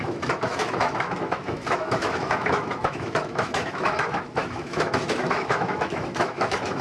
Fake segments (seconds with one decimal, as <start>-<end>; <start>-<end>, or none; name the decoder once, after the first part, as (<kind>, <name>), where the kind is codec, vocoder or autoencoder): 0.0-6.8 (autoencoder, DAC-VAE)